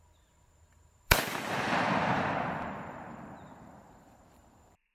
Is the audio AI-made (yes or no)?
yes